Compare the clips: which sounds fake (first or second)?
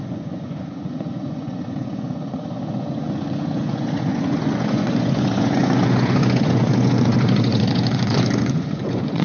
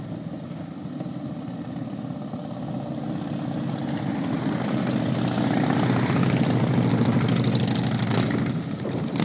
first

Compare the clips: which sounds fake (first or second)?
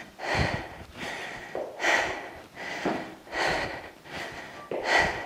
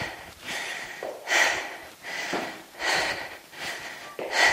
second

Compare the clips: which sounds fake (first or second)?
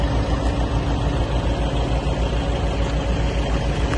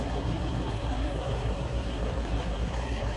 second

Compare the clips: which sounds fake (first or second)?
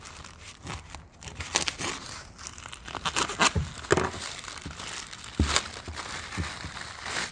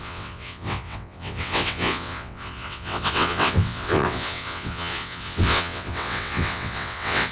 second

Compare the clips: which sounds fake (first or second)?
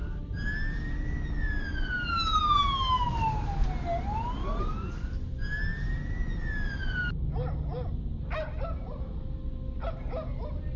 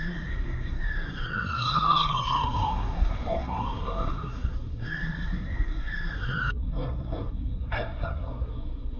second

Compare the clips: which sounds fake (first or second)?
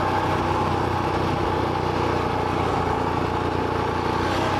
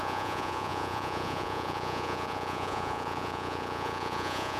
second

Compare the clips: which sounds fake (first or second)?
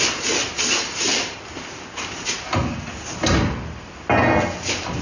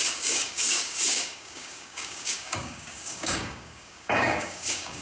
second